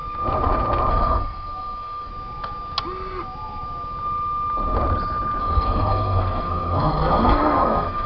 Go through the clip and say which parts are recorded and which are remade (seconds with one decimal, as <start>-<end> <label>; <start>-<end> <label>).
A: 0.0-0.9 recorded; 0.9-2.1 remade; 2.1-5.4 recorded; 5.4-8.1 remade